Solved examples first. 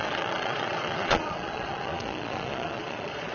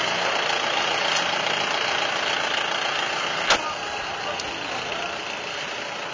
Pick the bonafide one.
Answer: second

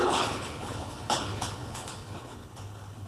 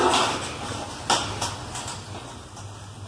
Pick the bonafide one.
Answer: second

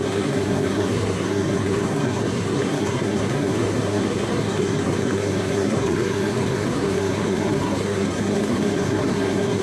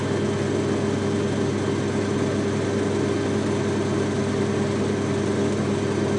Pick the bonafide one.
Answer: second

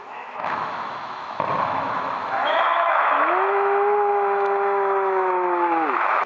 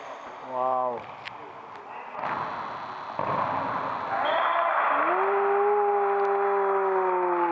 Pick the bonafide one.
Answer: second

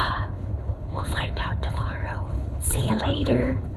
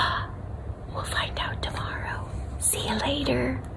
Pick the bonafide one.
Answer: second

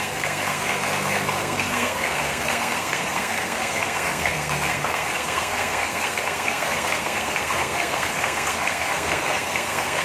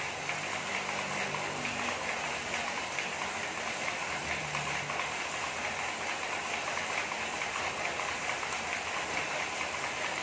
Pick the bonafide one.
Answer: second